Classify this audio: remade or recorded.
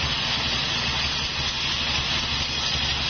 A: recorded